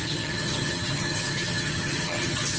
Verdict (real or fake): fake